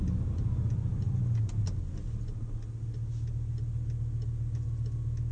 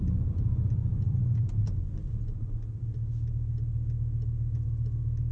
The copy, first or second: second